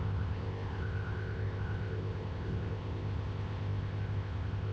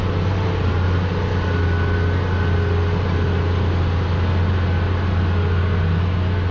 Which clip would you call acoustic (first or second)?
second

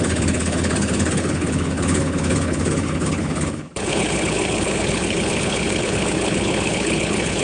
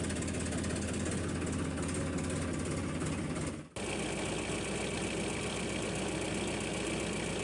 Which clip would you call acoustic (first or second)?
second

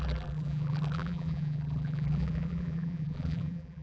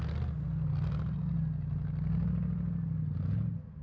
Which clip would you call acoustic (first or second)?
second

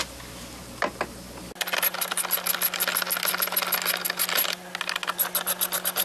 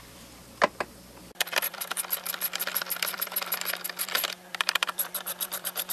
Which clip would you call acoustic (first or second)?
first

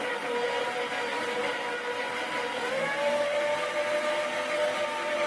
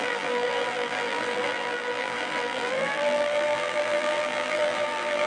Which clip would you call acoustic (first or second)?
first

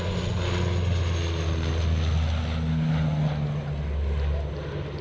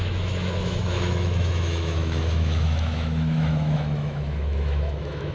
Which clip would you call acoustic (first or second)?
first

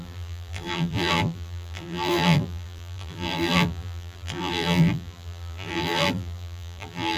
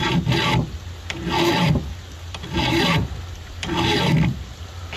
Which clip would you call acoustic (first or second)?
second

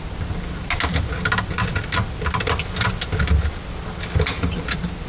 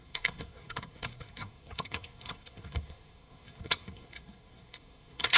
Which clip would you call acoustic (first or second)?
first